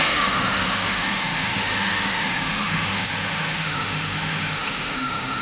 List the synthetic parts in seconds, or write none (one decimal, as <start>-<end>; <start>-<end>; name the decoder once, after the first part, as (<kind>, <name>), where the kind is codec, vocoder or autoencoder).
0.0-5.4 (autoencoder, DAC-VAE)